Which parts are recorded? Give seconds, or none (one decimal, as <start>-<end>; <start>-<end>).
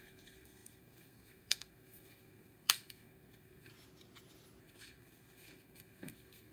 3.7-4.6